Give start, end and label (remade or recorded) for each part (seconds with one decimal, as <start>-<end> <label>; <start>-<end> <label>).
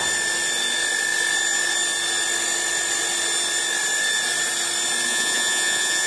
0.0-5.1 recorded; 5.1-6.1 remade